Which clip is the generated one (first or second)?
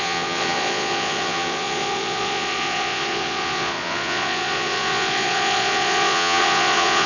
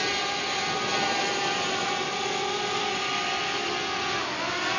first